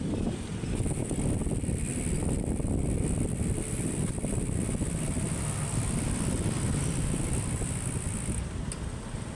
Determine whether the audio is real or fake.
real